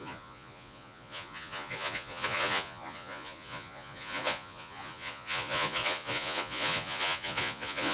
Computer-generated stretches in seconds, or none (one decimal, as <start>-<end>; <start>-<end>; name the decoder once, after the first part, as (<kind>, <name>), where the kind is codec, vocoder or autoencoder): 0.0-7.9 (vocoder, Vocos)

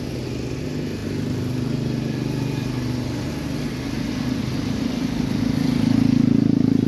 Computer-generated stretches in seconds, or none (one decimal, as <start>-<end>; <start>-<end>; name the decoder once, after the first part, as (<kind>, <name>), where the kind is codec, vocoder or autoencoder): none

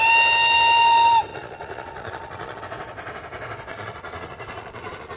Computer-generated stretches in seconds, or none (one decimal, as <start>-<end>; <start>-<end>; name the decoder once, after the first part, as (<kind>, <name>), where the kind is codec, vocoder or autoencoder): 1.3-2.6 (vocoder, Vocos); 3.7-5.2